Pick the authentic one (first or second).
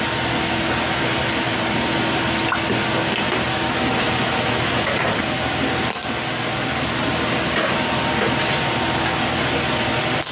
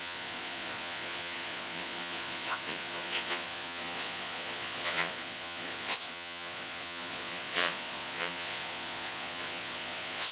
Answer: first